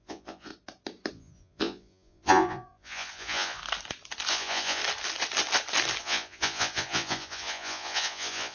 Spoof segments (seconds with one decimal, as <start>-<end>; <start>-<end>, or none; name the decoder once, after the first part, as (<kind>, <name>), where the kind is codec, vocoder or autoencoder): 0.0-0.5 (vocoder, Vocos); 1.1-3.6; 4.3-4.8; 6.0-8.5